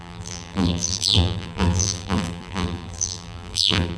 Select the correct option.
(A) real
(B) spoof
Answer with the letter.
B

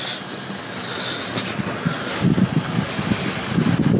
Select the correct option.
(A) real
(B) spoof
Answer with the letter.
A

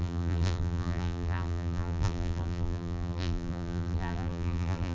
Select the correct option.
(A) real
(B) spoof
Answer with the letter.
B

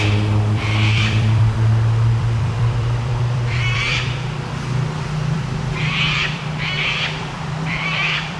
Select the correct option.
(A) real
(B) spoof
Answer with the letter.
B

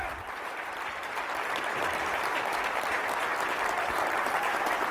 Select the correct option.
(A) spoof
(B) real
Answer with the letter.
A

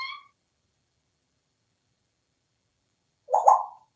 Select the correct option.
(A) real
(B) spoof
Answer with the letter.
B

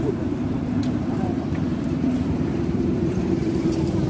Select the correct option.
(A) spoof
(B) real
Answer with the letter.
A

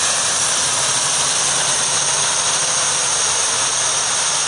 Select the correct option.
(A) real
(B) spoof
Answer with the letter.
A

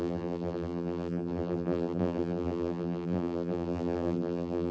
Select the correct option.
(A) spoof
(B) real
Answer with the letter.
A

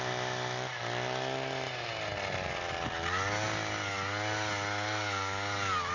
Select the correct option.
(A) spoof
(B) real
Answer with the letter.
B